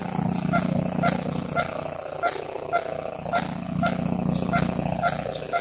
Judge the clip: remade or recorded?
recorded